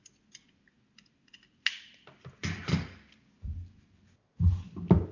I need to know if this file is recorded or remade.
recorded